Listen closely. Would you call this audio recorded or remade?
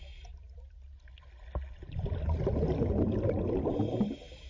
recorded